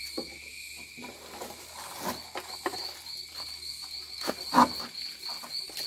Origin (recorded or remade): recorded